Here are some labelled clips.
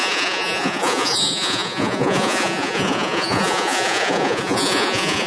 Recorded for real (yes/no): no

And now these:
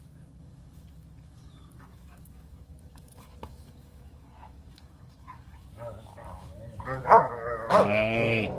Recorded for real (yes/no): no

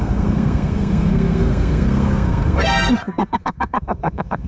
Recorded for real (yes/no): no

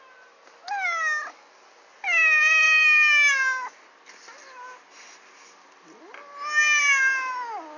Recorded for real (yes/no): yes